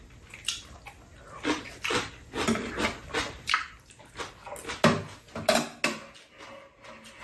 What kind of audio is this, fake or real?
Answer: real